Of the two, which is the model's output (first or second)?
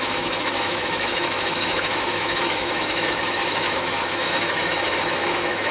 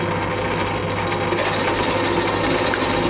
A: first